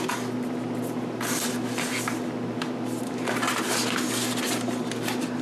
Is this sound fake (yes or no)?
no